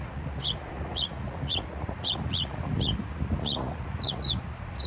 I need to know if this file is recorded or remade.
remade